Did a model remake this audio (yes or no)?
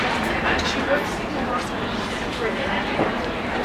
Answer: no